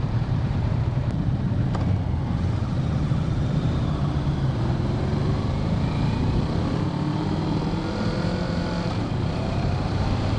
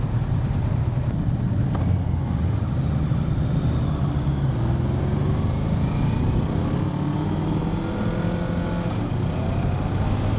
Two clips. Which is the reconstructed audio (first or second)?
first